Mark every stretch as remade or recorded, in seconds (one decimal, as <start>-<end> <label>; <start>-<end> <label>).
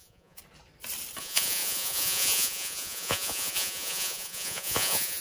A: 0.0-0.4 remade; 0.4-1.2 recorded; 1.2-5.2 remade